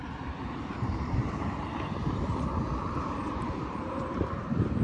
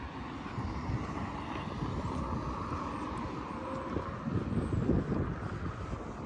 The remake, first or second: first